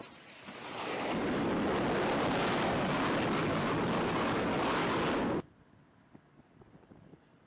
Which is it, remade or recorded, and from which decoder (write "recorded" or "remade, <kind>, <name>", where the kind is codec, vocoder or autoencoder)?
remade, vocoder, BigVGAN v2